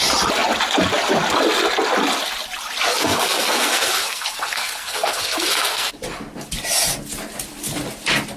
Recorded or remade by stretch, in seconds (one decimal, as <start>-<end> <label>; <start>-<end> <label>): 0.0-2.9 recorded; 2.9-5.9 remade; 5.9-8.4 recorded